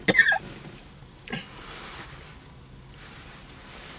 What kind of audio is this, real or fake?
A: real